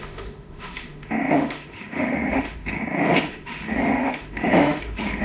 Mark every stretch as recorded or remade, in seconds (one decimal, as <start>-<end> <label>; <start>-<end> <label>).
0.0-5.2 remade